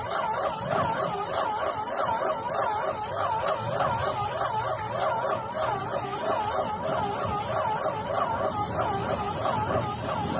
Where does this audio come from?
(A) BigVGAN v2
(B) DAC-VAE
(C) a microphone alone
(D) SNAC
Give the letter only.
C